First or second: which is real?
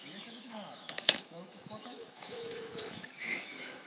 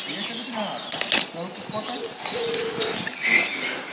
second